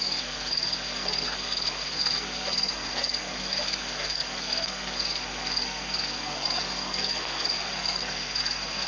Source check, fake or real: fake